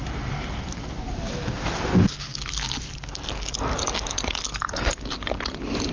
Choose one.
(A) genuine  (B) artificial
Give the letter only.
A